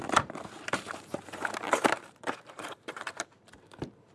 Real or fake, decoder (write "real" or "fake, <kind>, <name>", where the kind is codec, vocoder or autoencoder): fake, vocoder, BigVGAN v2